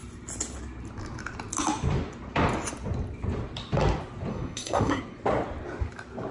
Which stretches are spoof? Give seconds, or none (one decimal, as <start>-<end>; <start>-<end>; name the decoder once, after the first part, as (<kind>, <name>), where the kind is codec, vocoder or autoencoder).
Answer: 4.3-5.0 (codec, SNAC)